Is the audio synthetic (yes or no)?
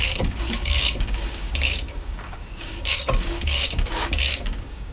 yes